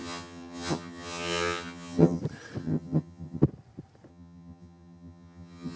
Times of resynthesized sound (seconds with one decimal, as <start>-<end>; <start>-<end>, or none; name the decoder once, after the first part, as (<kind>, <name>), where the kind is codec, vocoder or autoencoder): 0.0-2.2 (vocoder, HiFi-GAN); 2.6-3.4; 4.1-5.8